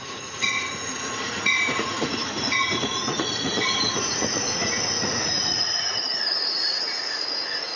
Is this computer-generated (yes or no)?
yes